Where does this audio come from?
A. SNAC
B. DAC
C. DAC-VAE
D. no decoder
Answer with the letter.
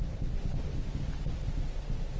D